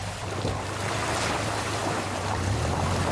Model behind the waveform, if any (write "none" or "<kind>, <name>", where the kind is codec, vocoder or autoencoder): none